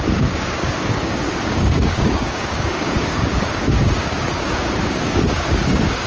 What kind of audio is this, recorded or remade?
remade